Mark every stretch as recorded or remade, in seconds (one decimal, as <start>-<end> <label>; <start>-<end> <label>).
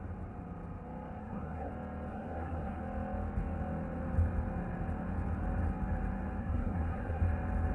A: 0.0-1.2 recorded; 1.2-1.7 remade; 1.7-2.1 recorded; 2.1-2.8 remade; 2.8-6.4 recorded; 6.4-7.2 remade; 7.2-7.7 recorded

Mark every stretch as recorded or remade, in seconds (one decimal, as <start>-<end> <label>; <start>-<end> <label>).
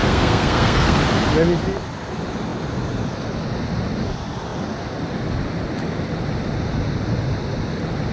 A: 0.0-1.0 remade; 1.0-8.1 recorded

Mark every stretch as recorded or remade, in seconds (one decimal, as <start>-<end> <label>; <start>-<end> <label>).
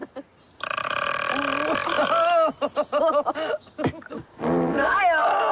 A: 0.0-4.3 recorded; 4.3-5.0 remade; 5.0-5.5 recorded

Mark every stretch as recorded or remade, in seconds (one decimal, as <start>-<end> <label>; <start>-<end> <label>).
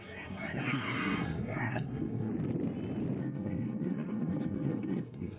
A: 0.0-2.3 remade; 2.3-3.2 recorded; 3.2-5.4 remade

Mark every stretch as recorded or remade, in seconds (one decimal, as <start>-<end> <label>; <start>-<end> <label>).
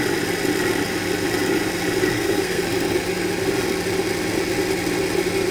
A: 0.0-2.1 recorded; 2.1-2.6 remade; 2.6-5.5 recorded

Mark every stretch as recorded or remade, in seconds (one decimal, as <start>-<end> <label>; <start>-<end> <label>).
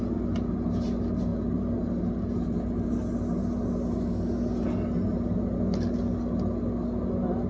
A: 0.0-7.5 recorded